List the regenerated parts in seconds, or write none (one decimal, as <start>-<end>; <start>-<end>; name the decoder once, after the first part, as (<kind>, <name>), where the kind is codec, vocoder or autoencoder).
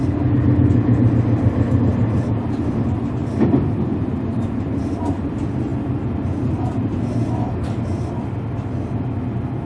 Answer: 1.9-2.4 (vocoder, BigVGAN v2)